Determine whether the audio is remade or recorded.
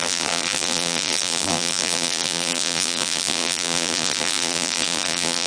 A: remade